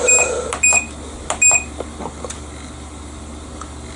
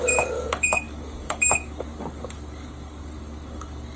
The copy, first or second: second